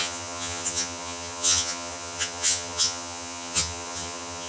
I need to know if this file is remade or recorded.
remade